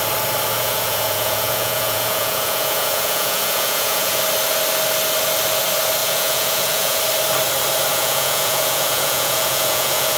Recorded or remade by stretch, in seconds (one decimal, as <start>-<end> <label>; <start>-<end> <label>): 0.0-0.5 recorded; 0.5-4.2 remade; 4.2-6.0 recorded; 6.0-7.0 remade; 7.0-7.9 recorded; 7.9-10.2 remade